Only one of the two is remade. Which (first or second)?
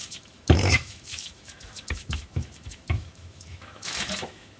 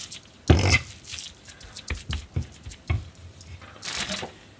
first